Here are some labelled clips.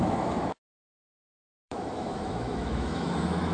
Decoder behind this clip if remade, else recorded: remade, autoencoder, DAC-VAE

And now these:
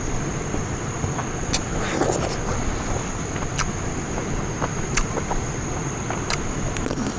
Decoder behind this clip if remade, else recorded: recorded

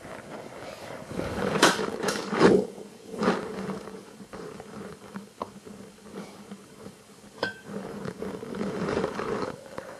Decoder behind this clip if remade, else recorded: remade, codec, DAC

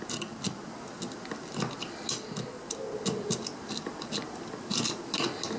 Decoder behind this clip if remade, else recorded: recorded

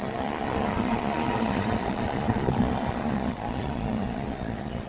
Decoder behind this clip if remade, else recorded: remade, vocoder, Vocos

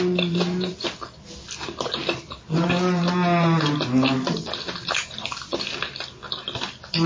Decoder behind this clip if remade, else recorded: recorded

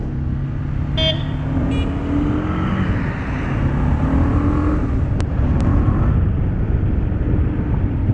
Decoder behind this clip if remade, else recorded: recorded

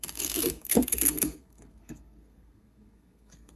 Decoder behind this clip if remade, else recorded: remade, codec, SNAC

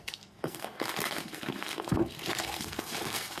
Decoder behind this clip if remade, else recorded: remade, codec, SNAC